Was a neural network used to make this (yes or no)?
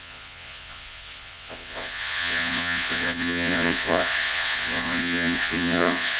yes